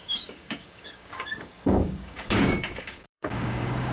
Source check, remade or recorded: remade